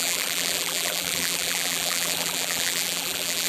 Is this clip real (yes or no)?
no